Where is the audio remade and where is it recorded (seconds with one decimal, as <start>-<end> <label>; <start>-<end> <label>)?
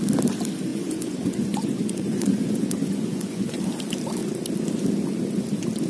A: 0.0-0.7 recorded; 0.7-3.6 remade; 3.6-5.9 recorded